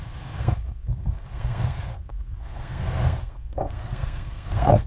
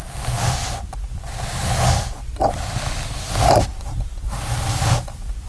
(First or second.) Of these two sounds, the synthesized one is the first